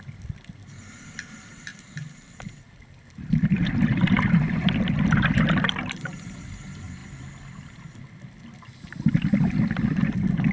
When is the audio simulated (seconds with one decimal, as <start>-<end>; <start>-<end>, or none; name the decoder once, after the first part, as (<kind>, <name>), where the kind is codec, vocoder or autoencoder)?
1.7-2.4 (vocoder, BigVGAN v2)